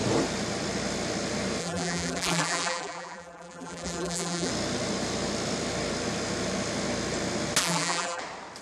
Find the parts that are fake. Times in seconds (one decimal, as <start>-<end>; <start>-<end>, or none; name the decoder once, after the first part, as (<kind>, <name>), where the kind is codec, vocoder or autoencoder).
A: 1.6-4.5 (vocoder, BigVGAN v2); 7.6-8.2